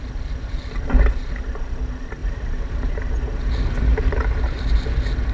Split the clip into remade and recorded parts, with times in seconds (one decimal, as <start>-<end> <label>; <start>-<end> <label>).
0.0-2.2 recorded; 2.2-2.9 remade; 2.9-3.9 recorded; 3.9-4.6 remade; 4.6-5.3 recorded